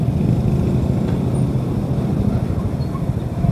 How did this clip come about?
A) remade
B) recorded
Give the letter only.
B